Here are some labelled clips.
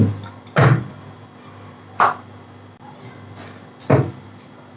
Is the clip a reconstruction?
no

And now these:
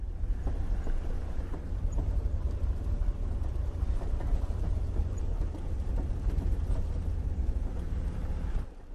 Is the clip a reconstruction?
yes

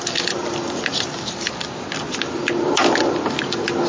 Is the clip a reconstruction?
yes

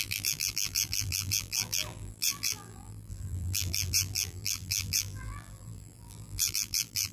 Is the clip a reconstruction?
yes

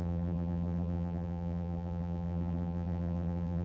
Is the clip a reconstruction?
yes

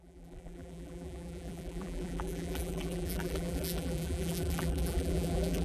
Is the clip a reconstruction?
yes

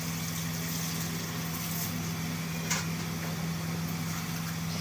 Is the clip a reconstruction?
no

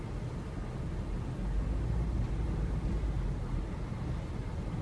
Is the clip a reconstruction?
no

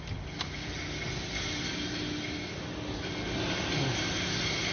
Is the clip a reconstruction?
no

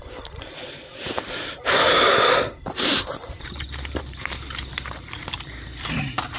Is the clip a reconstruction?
yes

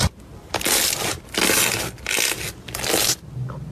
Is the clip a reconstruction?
no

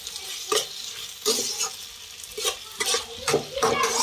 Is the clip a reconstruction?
no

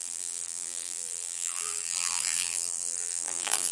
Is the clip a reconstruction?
yes